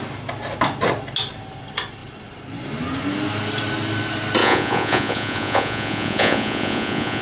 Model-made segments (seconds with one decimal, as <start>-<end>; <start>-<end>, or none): 4.4-7.2